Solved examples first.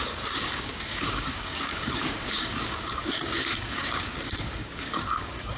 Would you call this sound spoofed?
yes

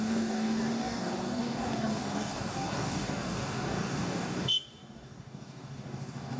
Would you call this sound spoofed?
yes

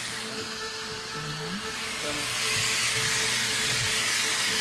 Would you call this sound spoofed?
yes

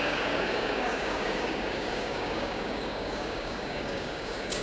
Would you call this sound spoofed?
yes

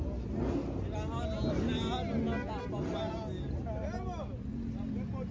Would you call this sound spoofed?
no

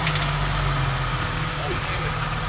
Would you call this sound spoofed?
no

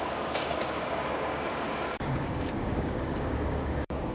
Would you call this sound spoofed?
yes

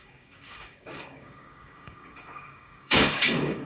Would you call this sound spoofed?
yes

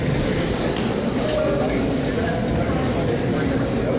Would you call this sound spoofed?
no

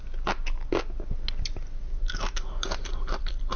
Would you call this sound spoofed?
no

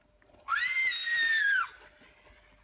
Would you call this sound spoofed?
no